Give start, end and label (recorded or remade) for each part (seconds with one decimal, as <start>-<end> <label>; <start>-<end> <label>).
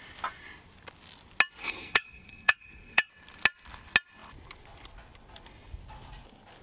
0.0-1.6 recorded; 1.6-3.1 remade; 3.1-6.6 recorded